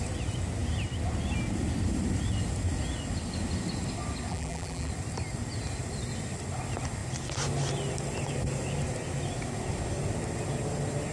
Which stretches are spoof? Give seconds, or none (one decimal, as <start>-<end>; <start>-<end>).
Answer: 4.3-4.9